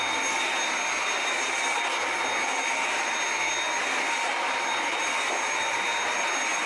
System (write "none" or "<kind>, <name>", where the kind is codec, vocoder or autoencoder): none